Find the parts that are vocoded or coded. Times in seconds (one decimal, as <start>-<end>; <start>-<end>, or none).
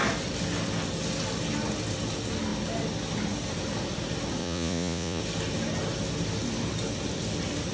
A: 4.4-5.2